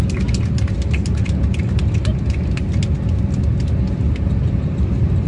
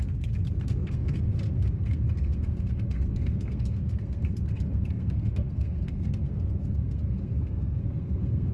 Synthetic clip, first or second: second